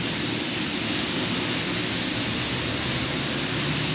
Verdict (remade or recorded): recorded